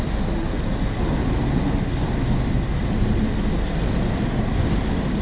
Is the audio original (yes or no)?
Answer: yes